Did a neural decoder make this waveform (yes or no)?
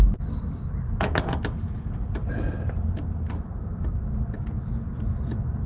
no